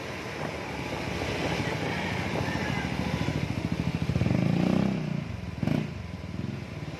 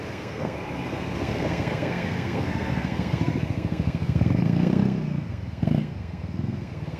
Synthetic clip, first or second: second